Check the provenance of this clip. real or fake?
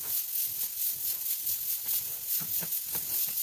real